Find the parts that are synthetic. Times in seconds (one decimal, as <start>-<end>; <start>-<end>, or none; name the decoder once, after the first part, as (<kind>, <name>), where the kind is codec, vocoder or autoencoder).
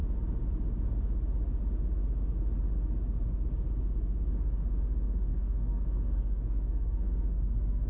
5.3-7.9 (codec, SNAC)